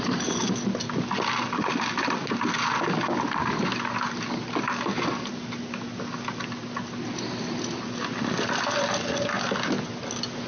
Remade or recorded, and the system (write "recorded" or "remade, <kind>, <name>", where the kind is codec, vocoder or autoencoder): recorded